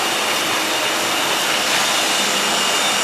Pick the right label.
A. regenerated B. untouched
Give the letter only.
B